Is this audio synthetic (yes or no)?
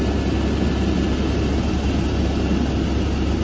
no